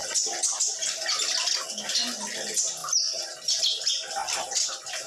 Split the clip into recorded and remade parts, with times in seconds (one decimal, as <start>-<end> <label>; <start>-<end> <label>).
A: 0.0-5.1 recorded